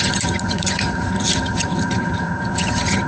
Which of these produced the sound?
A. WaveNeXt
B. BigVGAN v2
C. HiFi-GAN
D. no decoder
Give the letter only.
C